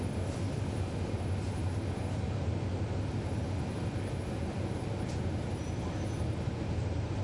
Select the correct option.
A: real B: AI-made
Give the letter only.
A